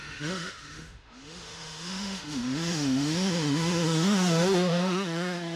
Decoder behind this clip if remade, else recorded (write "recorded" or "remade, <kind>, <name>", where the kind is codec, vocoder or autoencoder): remade, autoencoder, DAC-VAE